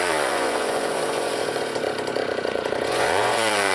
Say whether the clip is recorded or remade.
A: remade